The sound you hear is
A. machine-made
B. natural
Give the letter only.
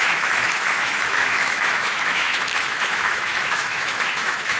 A